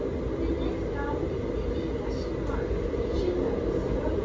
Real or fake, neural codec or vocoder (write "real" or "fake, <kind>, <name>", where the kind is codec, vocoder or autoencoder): real